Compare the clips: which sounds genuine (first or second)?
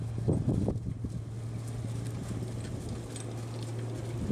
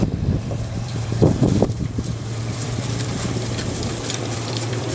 first